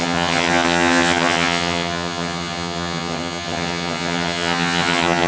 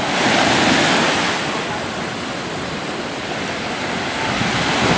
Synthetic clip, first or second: first